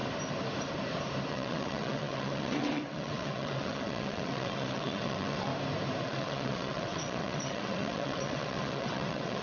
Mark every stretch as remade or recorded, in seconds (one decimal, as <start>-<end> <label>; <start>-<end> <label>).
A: 0.0-1.3 recorded; 1.3-5.5 remade; 5.5-6.0 recorded; 6.0-9.4 remade